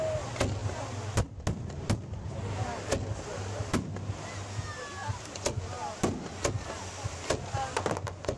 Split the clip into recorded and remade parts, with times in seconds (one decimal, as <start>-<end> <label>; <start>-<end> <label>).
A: 0.0-8.4 recorded